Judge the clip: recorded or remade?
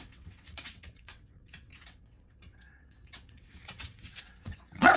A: remade